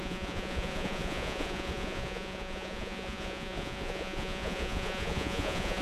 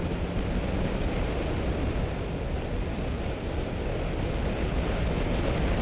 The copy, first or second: first